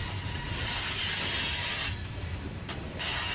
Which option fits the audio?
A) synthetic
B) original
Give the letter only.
B